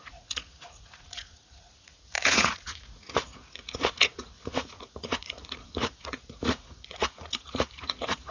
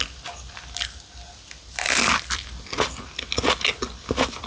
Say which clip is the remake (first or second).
first